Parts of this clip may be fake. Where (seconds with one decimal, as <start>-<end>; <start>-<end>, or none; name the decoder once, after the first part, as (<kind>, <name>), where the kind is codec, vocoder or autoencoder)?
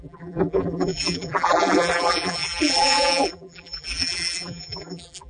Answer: 0.0-5.3 (vocoder, BigVGAN v2)